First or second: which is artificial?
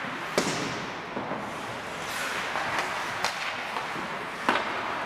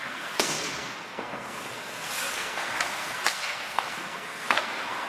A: second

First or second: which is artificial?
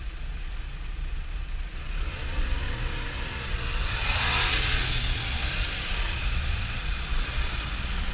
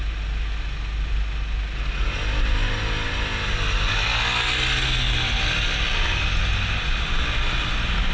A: first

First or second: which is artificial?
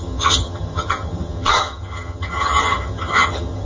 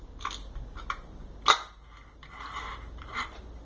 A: first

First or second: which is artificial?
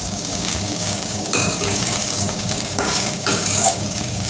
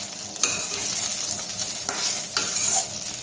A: first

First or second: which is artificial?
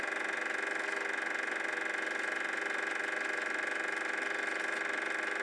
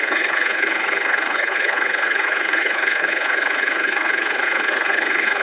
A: second